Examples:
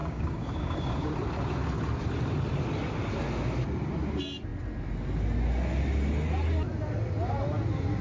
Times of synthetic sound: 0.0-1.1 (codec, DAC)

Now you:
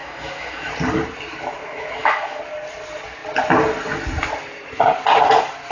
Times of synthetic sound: 0.0-0.7 (autoencoder, DAC-VAE); 1.6-2.4

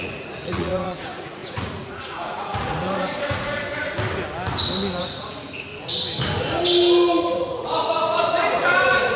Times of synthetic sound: 0.0-3.6 (vocoder, Vocos); 5.0-5.7; 7.2-9.2

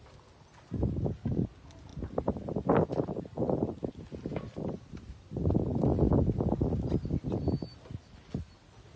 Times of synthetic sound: none